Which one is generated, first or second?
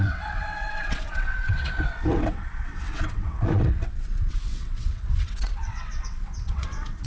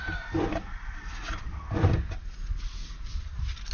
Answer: first